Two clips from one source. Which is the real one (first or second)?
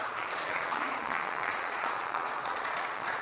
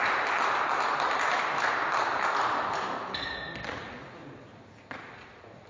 second